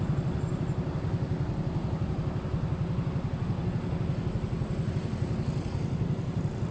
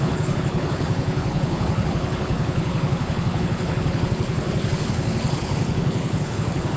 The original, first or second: first